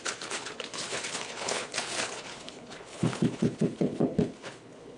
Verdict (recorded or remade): remade